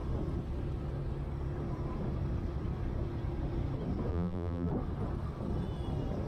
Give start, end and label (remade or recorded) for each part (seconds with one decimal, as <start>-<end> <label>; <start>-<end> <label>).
0.0-4.1 recorded; 4.1-4.7 remade; 4.7-6.3 recorded